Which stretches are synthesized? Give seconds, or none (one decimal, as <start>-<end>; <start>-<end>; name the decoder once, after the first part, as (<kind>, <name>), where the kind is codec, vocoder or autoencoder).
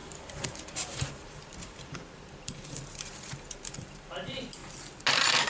0.0-4.6 (vocoder, BigVGAN v2)